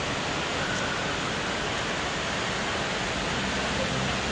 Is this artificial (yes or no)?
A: no